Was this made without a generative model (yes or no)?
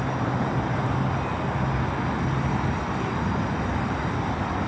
yes